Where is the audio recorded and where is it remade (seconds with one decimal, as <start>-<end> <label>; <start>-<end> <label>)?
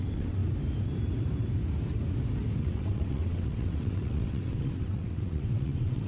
0.0-0.4 remade; 0.4-2.6 recorded; 2.6-6.1 remade